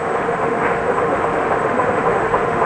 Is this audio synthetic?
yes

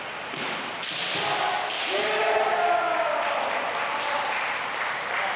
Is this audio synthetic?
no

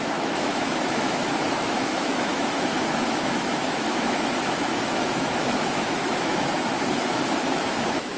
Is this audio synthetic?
yes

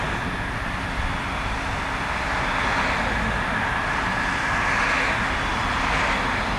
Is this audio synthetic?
no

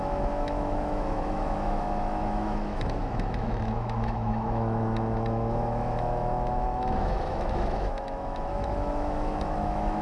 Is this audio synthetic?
yes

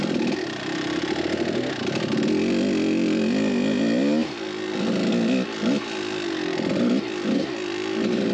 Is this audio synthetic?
no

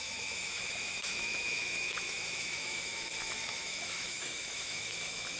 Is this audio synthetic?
yes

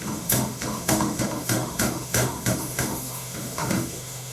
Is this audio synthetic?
yes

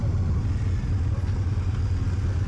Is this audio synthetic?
no